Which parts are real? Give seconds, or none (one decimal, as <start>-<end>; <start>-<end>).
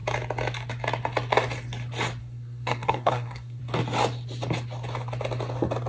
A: 0.0-2.2; 3.6-5.9